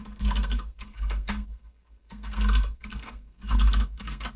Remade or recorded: remade